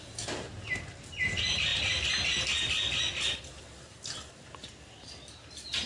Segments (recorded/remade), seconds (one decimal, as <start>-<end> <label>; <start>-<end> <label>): 0.0-5.9 recorded